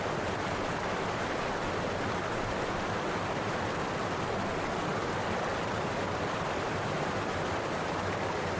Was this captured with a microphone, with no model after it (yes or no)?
yes